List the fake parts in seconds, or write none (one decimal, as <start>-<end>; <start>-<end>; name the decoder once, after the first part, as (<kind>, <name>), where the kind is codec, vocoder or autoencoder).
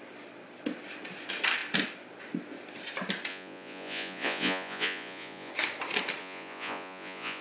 3.3-5.5 (vocoder, Vocos); 6.2-7.4